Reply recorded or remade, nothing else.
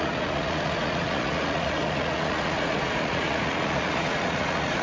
remade